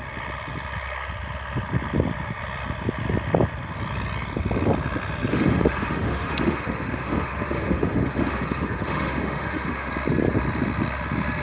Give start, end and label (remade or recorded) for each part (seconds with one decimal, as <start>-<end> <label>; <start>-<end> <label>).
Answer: 0.0-5.3 recorded; 5.3-9.9 remade; 9.9-11.4 recorded

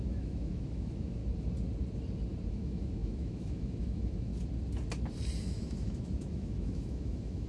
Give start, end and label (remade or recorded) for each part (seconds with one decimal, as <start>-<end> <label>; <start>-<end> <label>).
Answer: 0.0-1.2 remade; 1.2-2.5 recorded; 2.5-4.3 remade; 4.3-5.4 recorded; 5.4-7.5 remade

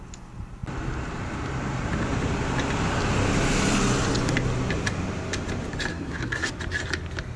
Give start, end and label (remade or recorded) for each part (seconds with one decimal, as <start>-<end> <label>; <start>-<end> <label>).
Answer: 0.0-5.9 recorded; 5.9-6.5 remade; 6.5-7.4 recorded

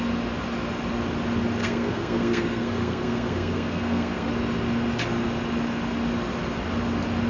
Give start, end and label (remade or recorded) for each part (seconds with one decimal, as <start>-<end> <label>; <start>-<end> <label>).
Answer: 0.0-1.6 recorded; 1.6-4.3 remade; 4.3-7.3 recorded

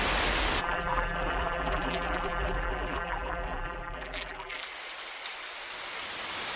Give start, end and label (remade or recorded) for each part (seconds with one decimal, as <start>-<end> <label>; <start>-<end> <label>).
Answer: 0.0-0.6 recorded; 0.6-4.6 remade; 4.6-6.6 recorded